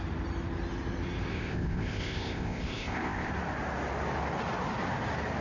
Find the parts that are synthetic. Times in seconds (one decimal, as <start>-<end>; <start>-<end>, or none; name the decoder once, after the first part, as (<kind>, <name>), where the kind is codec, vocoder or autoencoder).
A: 1.3-3.3 (codec, ZipCodec)